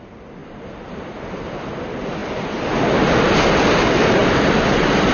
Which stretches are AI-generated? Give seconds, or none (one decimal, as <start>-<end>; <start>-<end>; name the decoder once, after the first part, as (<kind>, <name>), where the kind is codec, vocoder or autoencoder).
0.4-1.1 (vocoder, BigVGAN v2); 4.2-5.1